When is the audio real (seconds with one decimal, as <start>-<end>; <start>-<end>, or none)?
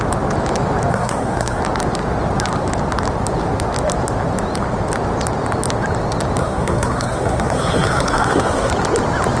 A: 0.0-0.9; 1.6-6.4; 8.7-9.4